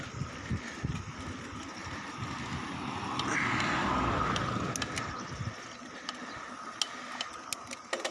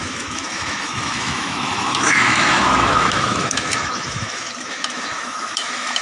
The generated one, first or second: second